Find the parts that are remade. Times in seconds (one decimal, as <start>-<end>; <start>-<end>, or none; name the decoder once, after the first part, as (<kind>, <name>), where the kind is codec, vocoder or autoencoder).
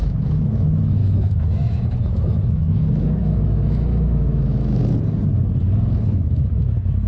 0.0-4.8 (autoencoder, DAC-VAE); 6.0-7.1